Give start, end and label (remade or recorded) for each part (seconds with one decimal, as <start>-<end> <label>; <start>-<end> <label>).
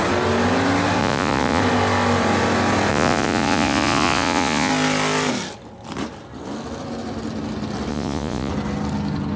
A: 0.0-1.0 recorded; 1.0-1.6 remade; 1.6-2.9 recorded; 2.9-4.7 remade; 4.7-7.9 recorded; 7.9-8.5 remade; 8.5-9.4 recorded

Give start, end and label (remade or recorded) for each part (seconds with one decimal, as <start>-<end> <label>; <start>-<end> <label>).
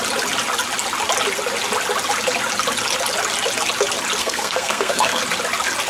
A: 0.0-4.2 recorded; 4.2-5.2 remade; 5.2-5.9 recorded